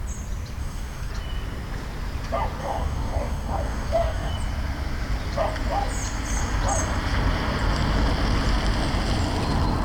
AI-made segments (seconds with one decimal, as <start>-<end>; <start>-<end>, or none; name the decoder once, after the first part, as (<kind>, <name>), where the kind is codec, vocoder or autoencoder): 0.6-1.1 (codec, DAC); 2.6-4.3

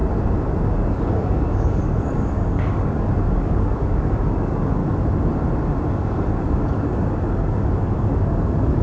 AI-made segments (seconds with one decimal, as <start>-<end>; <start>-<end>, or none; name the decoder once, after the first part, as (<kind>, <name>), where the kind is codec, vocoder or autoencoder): 0.9-4.8 (codec, DAC); 5.9-8.8

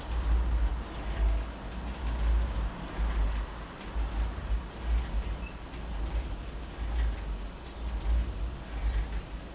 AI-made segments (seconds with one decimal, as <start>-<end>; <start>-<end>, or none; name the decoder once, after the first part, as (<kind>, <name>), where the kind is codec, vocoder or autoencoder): 2.0-2.7 (codec, DAC)